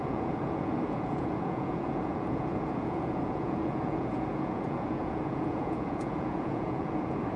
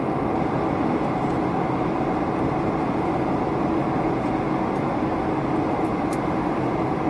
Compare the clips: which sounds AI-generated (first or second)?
first